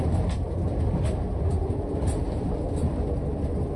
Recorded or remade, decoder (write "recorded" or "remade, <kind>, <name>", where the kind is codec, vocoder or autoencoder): recorded